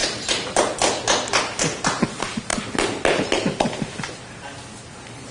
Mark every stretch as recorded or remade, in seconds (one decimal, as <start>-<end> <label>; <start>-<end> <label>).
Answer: 0.0-0.6 remade; 0.6-5.3 recorded